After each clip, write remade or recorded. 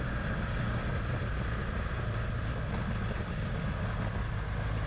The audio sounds recorded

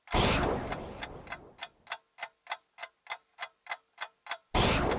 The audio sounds recorded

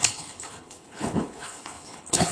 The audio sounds remade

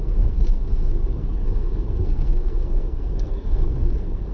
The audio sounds remade